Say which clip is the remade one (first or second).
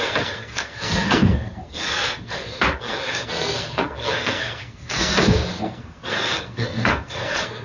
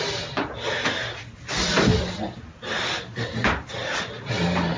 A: first